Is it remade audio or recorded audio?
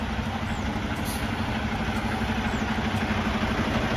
recorded